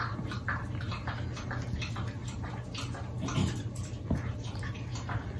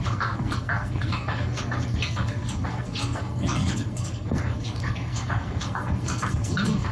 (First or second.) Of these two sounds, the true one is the first